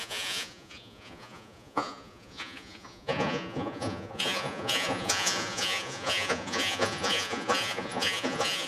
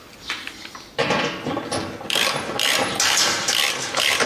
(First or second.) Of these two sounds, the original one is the second